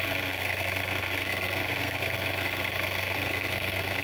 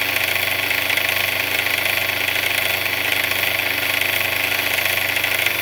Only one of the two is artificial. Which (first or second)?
first